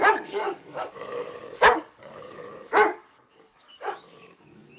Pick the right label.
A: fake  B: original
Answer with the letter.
A